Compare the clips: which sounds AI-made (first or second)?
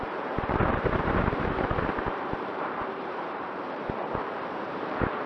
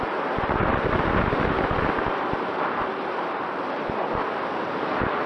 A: first